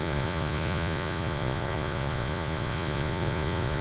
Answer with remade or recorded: remade